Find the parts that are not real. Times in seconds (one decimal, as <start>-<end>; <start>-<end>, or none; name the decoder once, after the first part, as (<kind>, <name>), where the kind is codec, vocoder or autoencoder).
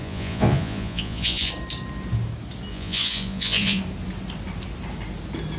0.0-1.5 (vocoder, Vocos); 2.7-3.8